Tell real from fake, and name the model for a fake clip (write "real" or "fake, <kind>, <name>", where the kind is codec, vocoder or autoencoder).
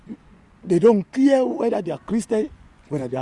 fake, vocoder, Vocos